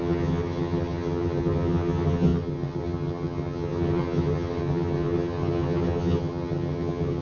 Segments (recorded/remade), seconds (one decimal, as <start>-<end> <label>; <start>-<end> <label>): 0.0-7.2 remade